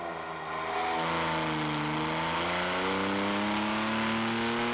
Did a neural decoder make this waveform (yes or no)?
no